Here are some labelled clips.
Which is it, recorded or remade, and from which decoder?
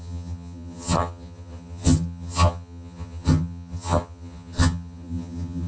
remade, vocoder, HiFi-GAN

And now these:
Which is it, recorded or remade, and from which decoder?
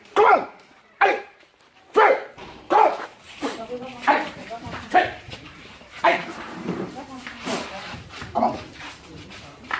remade, vocoder, BigVGAN v2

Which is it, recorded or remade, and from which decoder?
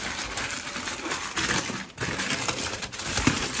recorded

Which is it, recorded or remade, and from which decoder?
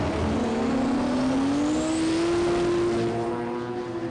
recorded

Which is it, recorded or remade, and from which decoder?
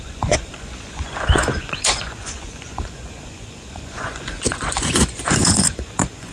remade, vocoder, Vocos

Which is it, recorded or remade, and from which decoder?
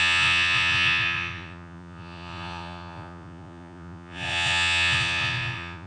remade, vocoder, Vocos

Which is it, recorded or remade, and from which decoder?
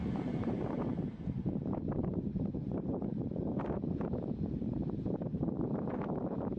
remade, vocoder, BigVGAN v2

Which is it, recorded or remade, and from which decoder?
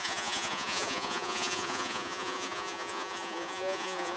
remade, vocoder, Vocos